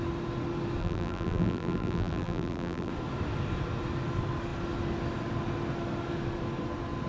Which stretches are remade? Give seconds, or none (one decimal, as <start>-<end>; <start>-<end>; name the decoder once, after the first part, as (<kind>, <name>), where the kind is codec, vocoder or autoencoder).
0.8-2.9 (vocoder, BigVGAN v2)